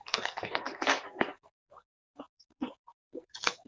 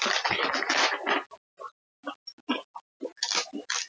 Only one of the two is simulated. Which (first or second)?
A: first